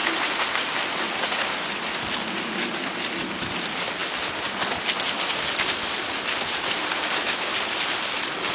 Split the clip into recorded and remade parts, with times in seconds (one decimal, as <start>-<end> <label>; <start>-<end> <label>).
0.0-8.5 recorded